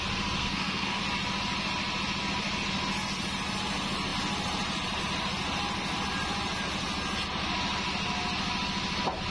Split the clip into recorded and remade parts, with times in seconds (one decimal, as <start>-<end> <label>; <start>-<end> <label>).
0.0-0.4 recorded; 0.4-1.0 remade; 1.0-9.3 recorded